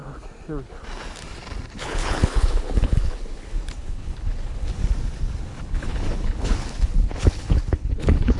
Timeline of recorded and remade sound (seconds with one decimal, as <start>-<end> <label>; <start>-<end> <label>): 0.0-1.7 recorded; 1.7-4.8 remade; 4.8-5.4 recorded; 5.4-8.4 remade